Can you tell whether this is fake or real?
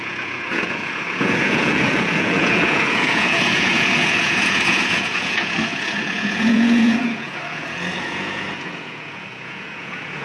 fake